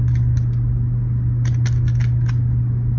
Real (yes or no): yes